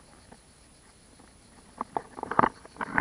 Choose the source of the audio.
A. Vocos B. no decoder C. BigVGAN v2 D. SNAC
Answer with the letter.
B